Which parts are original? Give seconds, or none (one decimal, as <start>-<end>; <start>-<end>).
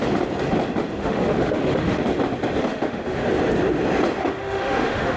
0.0-1.0; 2.0-2.6; 3.2-4.2